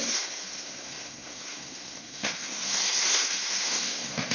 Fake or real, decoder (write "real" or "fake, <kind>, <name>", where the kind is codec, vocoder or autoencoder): fake, codec, SNAC